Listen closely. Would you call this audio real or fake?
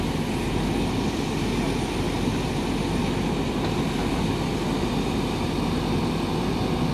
real